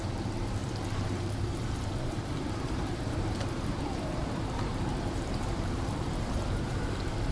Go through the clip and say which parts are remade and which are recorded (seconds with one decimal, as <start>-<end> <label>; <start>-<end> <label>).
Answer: 0.0-7.3 remade